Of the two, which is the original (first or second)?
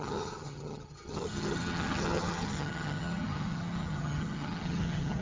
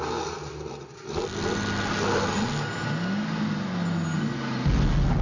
second